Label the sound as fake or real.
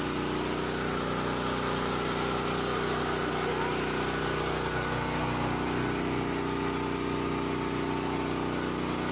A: real